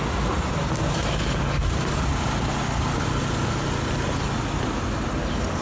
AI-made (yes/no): no